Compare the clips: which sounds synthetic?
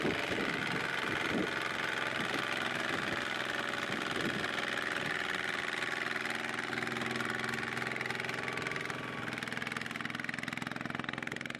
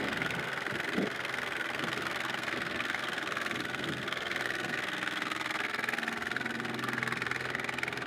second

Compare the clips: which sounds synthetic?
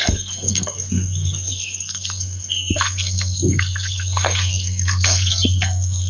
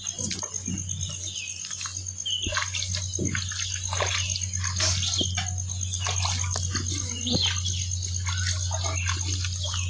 first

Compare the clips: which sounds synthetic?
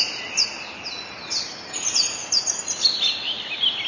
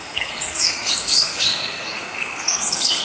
second